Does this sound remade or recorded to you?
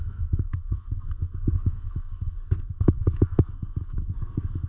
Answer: remade